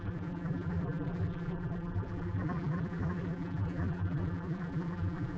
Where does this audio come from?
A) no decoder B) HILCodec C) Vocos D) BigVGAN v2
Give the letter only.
D